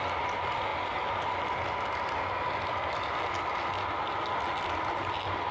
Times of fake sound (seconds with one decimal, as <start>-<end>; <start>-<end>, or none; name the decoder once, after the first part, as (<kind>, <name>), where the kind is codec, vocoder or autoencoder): none